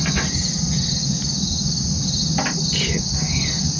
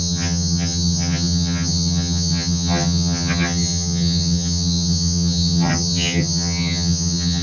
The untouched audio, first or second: first